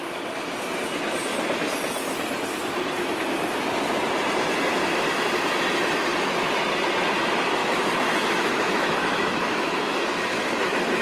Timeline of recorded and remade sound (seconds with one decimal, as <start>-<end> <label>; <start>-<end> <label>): 0.0-7.6 recorded; 7.6-11.0 remade